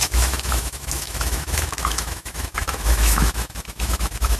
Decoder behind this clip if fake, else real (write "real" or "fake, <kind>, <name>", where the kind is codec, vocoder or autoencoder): fake, autoencoder, DAC-VAE